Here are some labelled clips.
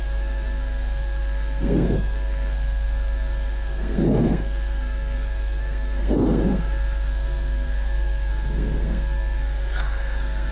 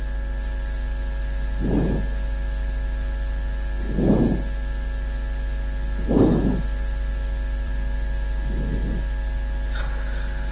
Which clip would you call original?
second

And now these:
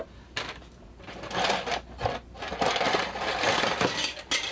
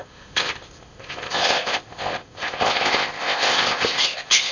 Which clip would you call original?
first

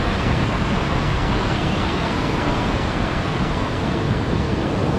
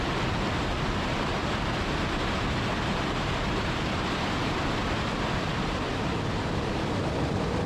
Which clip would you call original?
second